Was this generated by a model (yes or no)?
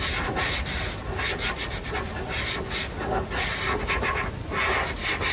no